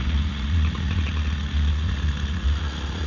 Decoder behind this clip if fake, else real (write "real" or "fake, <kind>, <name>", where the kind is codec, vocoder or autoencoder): fake, vocoder, Vocos